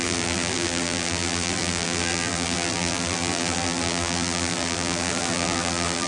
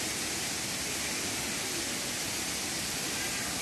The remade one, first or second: first